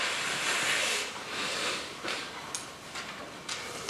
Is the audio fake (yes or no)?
no